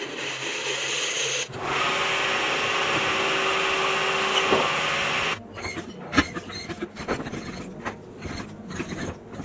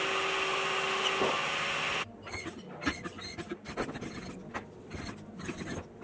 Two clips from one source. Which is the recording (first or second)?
first